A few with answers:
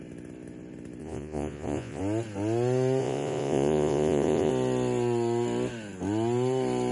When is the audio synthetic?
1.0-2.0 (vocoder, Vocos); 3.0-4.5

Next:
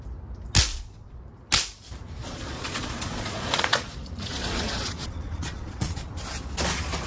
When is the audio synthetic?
0.7-1.2 (vocoder, Vocos); 2.2-6.1